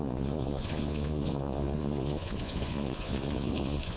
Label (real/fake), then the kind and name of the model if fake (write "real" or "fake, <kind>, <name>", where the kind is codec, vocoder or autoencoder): fake, vocoder, Vocos